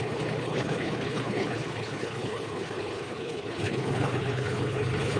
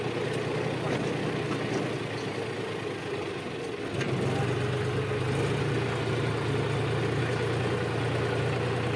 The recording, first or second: second